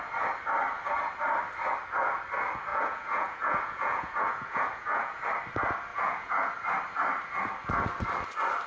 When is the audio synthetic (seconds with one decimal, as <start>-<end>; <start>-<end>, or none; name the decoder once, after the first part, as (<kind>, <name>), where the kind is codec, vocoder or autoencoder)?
2.7-5.2 (vocoder, Vocos); 5.9-6.5